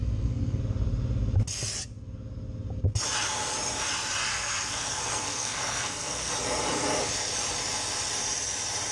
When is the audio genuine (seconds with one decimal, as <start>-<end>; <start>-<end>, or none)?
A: 0.6-4.3; 6.3-8.9